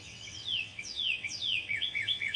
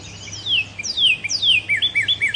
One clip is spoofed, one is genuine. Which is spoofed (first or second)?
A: first